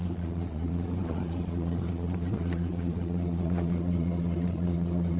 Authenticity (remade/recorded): remade